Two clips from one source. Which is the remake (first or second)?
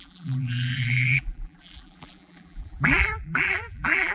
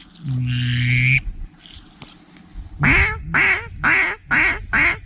first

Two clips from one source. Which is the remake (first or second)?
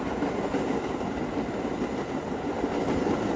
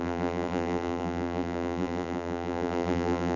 second